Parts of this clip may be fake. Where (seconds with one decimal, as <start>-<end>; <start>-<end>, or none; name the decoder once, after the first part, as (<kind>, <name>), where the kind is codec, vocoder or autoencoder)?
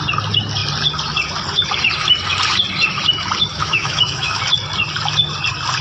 3.5-4.4 (autoencoder, DAC-VAE)